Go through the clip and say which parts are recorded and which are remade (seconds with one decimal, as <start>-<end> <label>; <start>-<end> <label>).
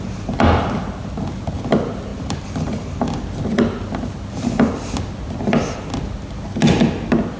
0.0-2.1 recorded; 2.1-3.3 remade; 3.3-7.4 recorded